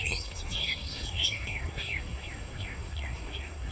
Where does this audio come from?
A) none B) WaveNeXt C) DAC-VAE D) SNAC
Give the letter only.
D